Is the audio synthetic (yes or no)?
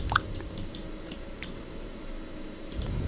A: yes